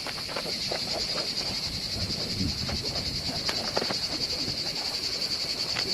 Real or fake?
fake